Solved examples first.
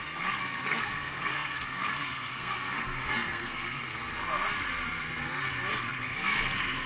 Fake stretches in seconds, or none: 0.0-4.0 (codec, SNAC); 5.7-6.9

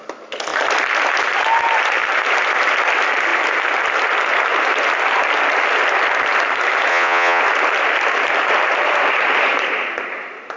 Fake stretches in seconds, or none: 6.9-7.4 (vocoder, WaveNeXt)

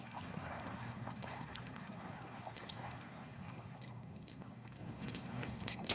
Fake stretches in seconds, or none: 0.0-5.9 (codec, SNAC)